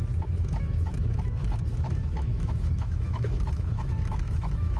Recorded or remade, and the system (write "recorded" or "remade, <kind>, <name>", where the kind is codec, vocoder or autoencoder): remade, autoencoder, DAC-VAE